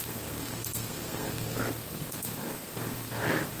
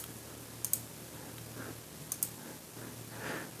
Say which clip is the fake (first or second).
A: first